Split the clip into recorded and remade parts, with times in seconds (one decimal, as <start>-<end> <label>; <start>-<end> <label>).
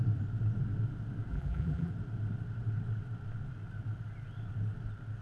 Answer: 0.0-1.3 recorded; 1.3-1.9 remade; 1.9-5.2 recorded